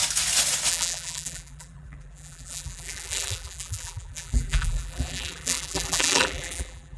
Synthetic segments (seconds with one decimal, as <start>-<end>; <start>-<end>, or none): 0.7-7.0